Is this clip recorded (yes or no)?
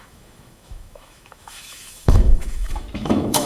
no